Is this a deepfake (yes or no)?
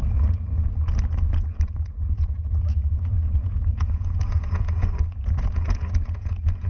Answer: yes